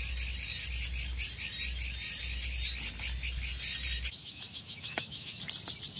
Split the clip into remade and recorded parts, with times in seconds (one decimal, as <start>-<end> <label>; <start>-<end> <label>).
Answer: 0.0-4.2 recorded; 4.2-5.4 remade; 5.4-6.0 recorded